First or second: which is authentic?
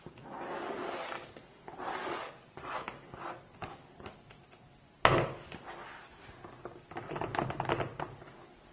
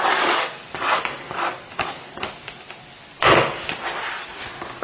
first